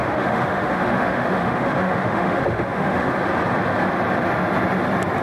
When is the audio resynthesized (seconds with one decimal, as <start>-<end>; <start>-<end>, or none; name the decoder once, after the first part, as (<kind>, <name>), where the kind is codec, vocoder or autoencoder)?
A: 0.0-3.1 (autoencoder, DAC-VAE)